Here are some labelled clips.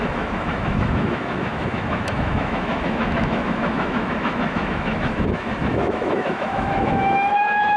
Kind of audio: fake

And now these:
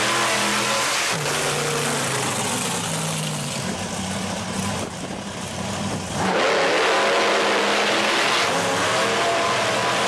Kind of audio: real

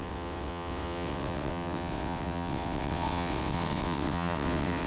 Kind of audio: fake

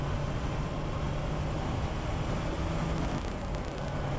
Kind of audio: real